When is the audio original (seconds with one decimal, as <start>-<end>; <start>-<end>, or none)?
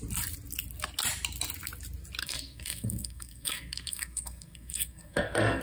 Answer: 0.0-2.2